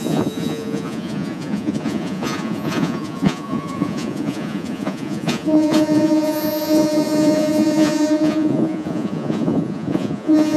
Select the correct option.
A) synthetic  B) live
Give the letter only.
A